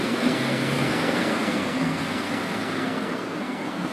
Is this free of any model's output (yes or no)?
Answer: no